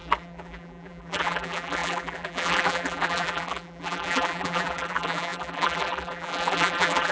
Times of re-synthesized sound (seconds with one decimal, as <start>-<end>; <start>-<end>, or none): 0.0-7.1